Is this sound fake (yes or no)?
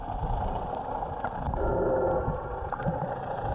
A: no